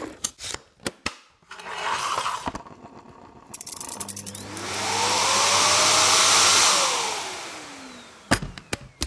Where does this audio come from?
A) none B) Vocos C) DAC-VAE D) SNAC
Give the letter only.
A